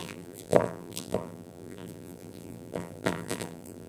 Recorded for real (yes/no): no